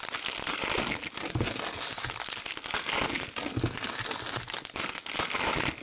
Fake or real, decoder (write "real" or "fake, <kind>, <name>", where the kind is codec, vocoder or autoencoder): real